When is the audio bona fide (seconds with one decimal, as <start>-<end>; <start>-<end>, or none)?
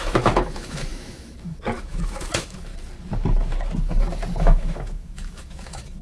2.7-4.4